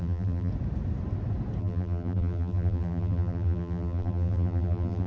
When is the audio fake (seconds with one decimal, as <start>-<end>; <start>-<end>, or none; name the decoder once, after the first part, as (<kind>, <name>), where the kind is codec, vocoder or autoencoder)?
0.0-0.5 (vocoder, BigVGAN v2); 1.6-5.1